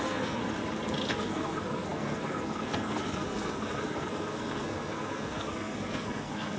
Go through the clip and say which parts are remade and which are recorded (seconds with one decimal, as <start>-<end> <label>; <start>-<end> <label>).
0.0-0.4 remade; 0.4-1.1 recorded; 1.1-6.6 remade